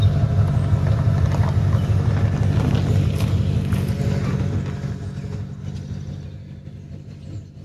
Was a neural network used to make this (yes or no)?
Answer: no